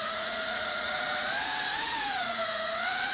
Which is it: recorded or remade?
remade